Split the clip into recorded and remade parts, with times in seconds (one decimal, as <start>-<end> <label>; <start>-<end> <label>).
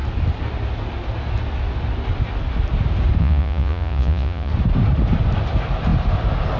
0.0-3.2 recorded; 3.2-4.5 remade; 4.5-6.6 recorded